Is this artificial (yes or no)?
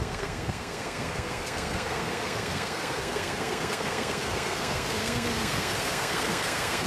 yes